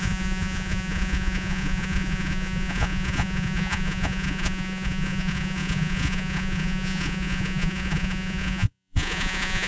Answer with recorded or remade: remade